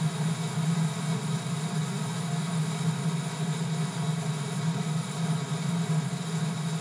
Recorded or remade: recorded